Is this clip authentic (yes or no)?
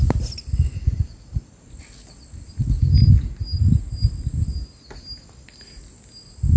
yes